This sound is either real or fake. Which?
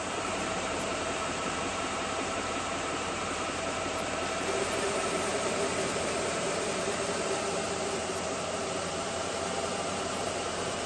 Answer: fake